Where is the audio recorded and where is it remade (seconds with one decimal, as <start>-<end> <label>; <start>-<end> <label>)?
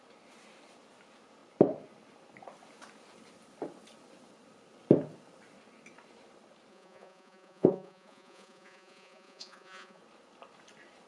0.0-6.7 recorded; 6.7-10.0 remade; 10.0-11.1 recorded